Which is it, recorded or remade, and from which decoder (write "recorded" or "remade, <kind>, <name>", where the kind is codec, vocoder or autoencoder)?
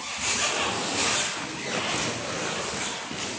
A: recorded